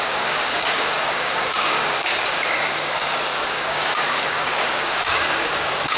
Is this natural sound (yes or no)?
no